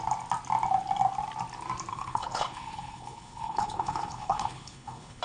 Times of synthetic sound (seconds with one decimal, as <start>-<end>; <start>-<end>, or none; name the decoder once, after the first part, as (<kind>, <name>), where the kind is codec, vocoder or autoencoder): 1.9-5.2 (codec, HILCodec)